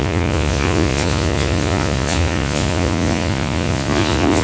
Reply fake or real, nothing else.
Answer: fake